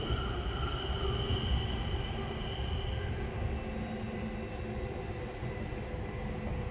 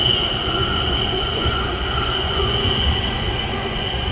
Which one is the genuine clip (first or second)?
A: first